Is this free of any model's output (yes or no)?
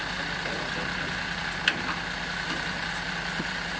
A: yes